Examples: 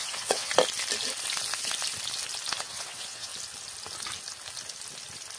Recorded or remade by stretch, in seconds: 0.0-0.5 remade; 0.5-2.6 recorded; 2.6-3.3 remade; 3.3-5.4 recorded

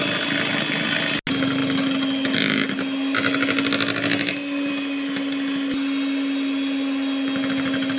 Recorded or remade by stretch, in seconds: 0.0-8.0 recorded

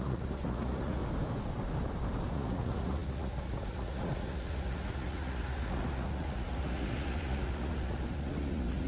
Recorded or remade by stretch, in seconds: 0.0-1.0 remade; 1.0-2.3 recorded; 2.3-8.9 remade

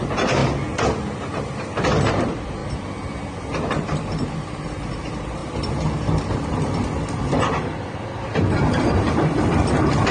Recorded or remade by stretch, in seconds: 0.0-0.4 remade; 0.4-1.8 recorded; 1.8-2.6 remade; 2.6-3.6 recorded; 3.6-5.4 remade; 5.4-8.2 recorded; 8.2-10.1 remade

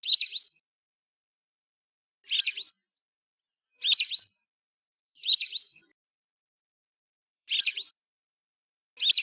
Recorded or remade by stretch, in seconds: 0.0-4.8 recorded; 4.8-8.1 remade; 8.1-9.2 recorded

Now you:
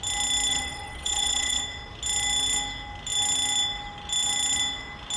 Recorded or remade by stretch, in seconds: 0.0-0.5 recorded; 0.5-1.6 remade; 1.6-5.2 recorded

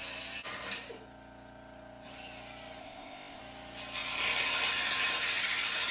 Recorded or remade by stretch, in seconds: 0.0-2.8 recorded; 2.8-3.4 remade; 3.4-5.9 recorded

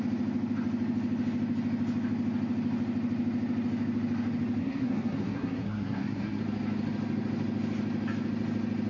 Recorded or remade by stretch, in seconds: 0.0-4.6 recorded; 4.6-6.4 remade; 6.4-8.9 recorded